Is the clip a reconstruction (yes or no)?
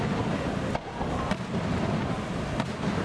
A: no